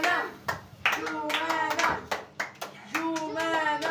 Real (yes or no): yes